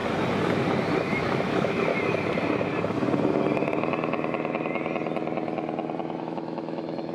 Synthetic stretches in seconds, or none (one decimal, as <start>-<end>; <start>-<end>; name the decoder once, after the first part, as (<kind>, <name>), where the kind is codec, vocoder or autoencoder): 1.0-1.9 (autoencoder, DAC-VAE); 6.2-7.1